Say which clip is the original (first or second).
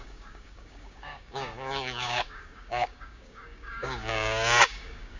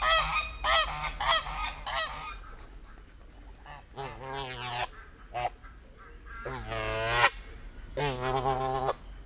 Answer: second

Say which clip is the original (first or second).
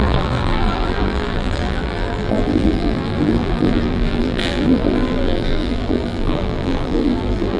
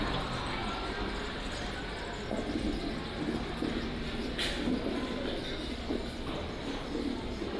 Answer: second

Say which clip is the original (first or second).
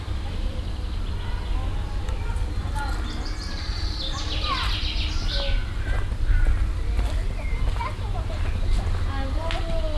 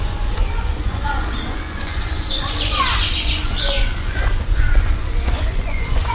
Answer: first